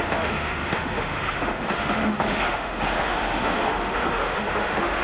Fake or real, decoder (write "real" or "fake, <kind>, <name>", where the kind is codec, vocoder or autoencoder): fake, autoencoder, DAC-VAE